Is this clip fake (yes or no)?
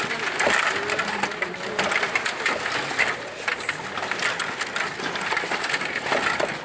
no